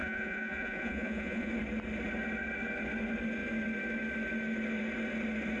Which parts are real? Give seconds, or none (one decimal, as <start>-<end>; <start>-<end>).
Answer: 1.5-5.6